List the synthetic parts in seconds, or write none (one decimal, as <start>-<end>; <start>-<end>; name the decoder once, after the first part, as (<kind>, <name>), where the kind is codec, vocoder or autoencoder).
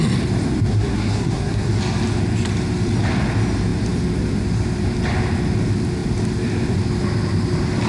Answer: 0.7-1.8 (codec, SNAC)